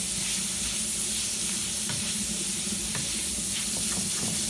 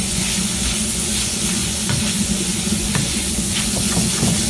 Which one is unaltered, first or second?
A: first